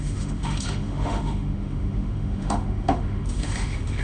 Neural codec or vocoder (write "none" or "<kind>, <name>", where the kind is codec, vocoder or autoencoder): autoencoder, DAC-VAE